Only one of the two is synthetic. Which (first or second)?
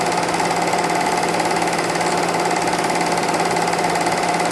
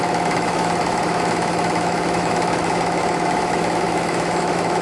second